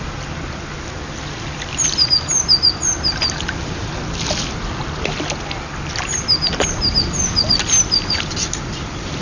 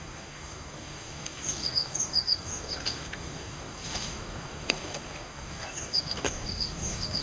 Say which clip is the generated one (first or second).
second